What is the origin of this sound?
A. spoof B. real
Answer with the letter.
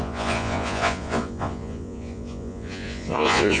A